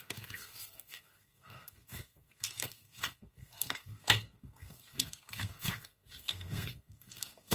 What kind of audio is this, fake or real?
fake